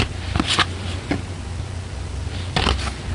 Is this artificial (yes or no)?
no